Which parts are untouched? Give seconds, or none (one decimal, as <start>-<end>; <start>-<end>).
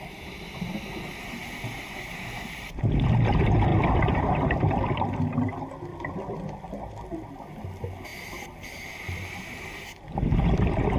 0.0-3.7; 5.1-5.9; 6.4-11.0